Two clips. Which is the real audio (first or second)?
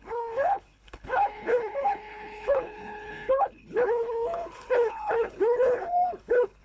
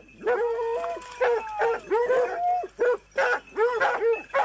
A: second